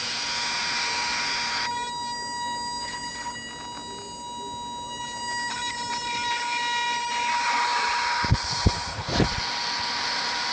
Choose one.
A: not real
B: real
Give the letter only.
B